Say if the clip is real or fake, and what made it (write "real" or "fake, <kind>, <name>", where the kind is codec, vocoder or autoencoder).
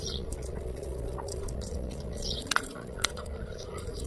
fake, vocoder, Vocos